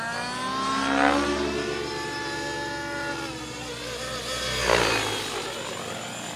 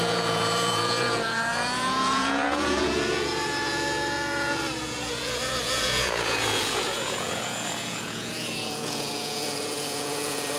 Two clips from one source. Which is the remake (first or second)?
second